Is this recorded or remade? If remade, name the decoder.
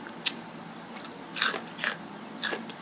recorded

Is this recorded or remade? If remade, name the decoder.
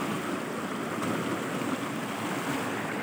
recorded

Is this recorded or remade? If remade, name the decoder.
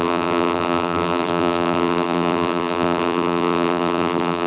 remade, vocoder, BigVGAN v2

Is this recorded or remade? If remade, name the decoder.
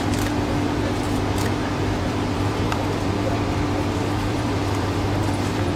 remade, vocoder, BigVGAN v2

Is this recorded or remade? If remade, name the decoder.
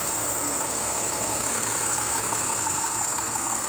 remade, codec, SNAC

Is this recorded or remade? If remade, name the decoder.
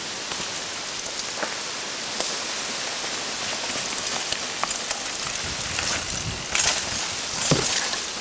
recorded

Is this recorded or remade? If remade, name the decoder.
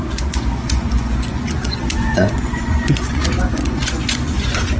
remade, vocoder, Vocos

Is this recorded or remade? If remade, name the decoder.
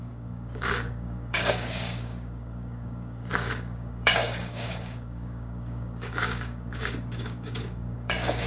remade, codec, DAC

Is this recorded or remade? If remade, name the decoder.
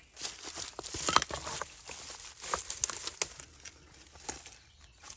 recorded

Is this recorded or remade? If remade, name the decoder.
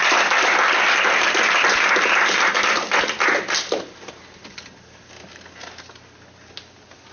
recorded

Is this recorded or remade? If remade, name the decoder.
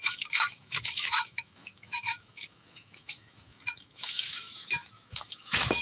remade, autoencoder, DAC-VAE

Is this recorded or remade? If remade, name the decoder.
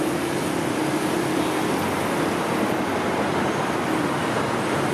recorded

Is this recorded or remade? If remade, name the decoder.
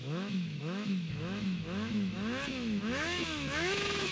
remade, autoencoder, DAC-VAE